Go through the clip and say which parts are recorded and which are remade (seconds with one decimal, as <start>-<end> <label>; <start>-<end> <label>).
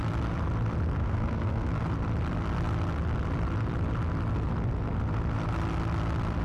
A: 0.0-1.0 recorded; 1.0-1.7 remade; 1.7-6.4 recorded